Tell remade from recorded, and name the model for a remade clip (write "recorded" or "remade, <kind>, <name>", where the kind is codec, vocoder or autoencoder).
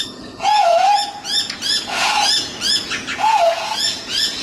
remade, vocoder, Vocos